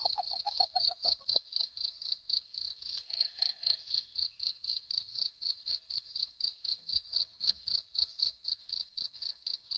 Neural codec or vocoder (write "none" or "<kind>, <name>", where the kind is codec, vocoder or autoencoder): codec, SNAC